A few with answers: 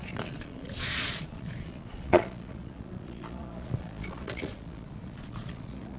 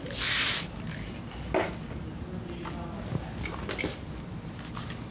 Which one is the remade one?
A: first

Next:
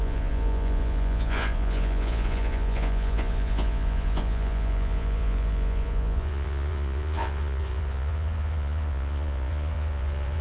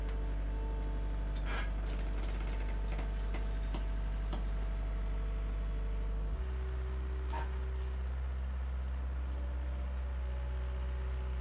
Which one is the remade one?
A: first